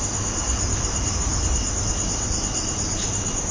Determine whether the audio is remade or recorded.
recorded